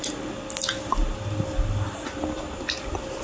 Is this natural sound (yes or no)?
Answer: yes